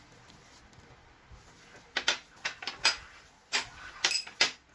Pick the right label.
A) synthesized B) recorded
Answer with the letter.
B